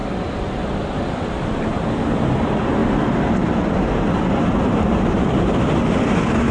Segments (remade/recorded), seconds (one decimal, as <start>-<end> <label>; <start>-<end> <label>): 0.0-6.5 remade